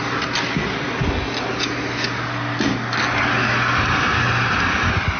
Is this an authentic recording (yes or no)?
yes